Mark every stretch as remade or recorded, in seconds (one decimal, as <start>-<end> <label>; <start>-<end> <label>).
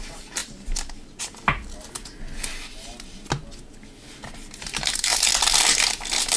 0.0-1.6 remade; 1.6-4.1 recorded; 4.1-5.1 remade; 5.1-6.4 recorded